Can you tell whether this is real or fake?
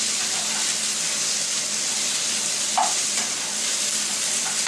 fake